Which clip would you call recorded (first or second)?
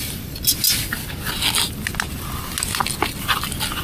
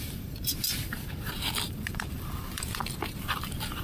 first